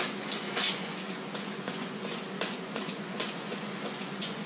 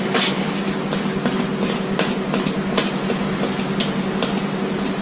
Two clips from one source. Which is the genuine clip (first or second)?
second